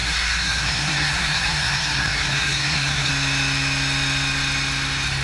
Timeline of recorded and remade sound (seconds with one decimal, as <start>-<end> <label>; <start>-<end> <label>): 0.0-3.1 remade; 3.1-5.2 recorded

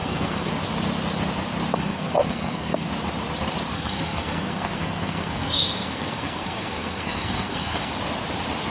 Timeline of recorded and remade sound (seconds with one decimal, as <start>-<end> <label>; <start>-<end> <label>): 0.0-0.5 remade; 0.5-1.7 recorded; 1.7-2.9 remade; 2.9-3.7 recorded; 3.7-7.9 remade; 7.9-8.7 recorded

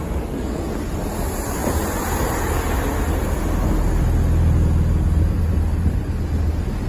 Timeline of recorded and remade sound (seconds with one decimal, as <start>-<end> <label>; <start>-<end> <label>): 0.0-6.9 recorded

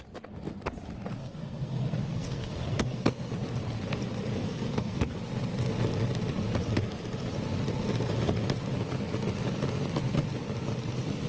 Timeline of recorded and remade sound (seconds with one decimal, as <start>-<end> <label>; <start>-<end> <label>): 0.0-1.2 recorded; 1.2-3.3 remade; 3.3-4.4 recorded; 4.4-5.2 remade; 5.2-11.3 recorded